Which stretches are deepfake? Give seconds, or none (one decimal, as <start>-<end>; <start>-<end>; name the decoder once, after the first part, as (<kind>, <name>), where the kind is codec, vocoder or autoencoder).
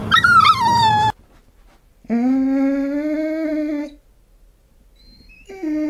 none